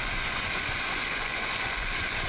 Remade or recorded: remade